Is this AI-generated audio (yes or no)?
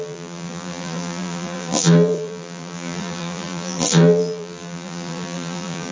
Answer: yes